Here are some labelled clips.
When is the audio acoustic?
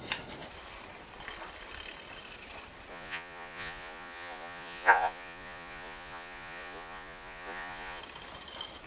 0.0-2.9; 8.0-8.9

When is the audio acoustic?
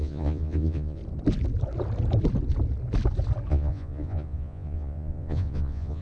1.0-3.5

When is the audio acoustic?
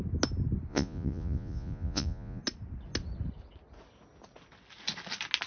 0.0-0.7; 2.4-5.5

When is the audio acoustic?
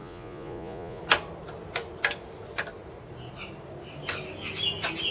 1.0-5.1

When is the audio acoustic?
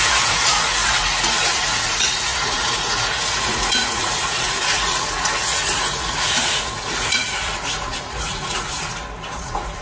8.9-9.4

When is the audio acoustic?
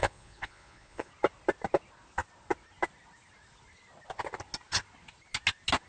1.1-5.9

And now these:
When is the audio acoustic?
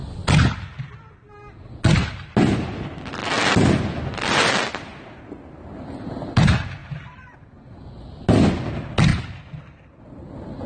0.0-10.7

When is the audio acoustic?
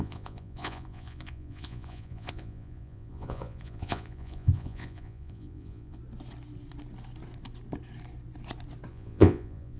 6.0-8.9